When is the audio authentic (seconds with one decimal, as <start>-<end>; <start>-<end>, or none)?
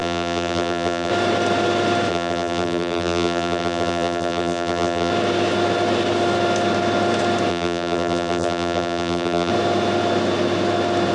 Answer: 1.1-2.1; 5.1-7.5; 9.5-11.1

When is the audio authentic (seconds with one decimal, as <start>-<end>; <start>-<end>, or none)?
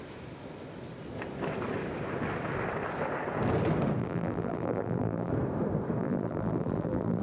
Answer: 0.0-4.0; 5.3-6.0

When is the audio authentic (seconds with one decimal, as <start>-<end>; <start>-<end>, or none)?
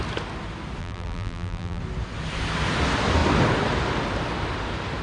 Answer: 0.0-0.8; 1.8-5.0